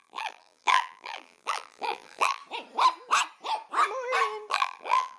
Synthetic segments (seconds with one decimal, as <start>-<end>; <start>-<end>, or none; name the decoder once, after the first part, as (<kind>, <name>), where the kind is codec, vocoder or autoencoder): 0.0-2.4 (vocoder, BigVGAN v2); 4.5-5.2